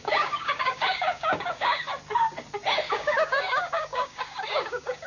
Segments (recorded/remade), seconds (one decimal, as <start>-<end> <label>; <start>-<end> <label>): 0.0-1.9 remade; 1.9-2.9 recorded; 2.9-5.1 remade